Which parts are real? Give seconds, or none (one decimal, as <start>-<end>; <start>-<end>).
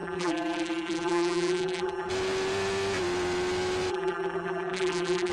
2.1-3.9